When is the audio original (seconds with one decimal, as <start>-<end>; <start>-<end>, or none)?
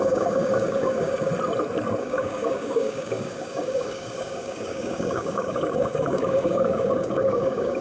1.3-2.0